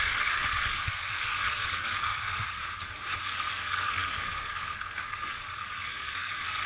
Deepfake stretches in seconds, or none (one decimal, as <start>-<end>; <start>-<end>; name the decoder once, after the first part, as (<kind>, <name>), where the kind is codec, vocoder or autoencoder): 0.0-2.6 (codec, SNAC); 3.2-6.7